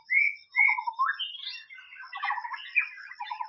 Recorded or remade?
recorded